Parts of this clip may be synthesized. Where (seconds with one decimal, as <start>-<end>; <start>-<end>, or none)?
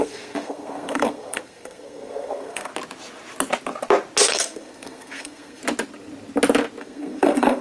0.0-2.7; 4.3-5.6; 6.8-7.6